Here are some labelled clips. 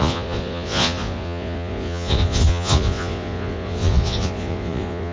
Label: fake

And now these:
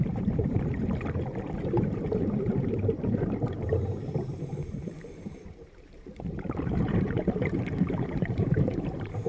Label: fake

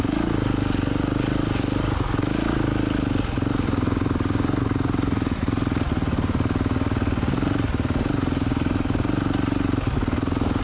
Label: real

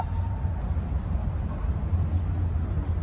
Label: real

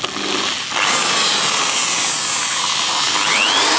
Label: real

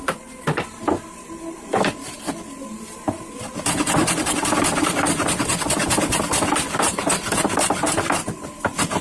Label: real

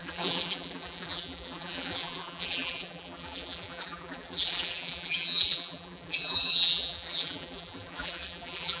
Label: fake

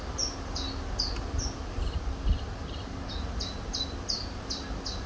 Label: real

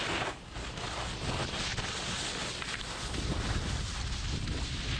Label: real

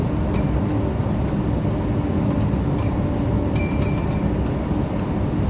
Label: real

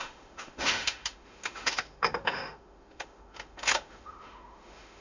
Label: fake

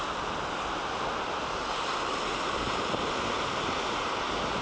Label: real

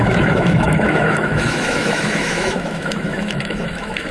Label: fake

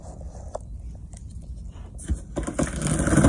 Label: real